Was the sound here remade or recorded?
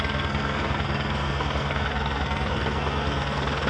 remade